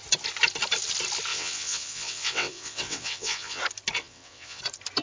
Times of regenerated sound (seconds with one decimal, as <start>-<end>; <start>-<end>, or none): 1.3-3.6; 4.0-4.6